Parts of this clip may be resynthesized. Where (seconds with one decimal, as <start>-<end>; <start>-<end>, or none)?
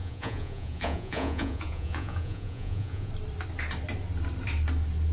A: 0.0-3.1